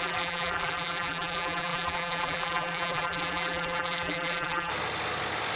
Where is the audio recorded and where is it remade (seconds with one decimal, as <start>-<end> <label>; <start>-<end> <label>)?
0.0-4.7 remade; 4.7-5.6 recorded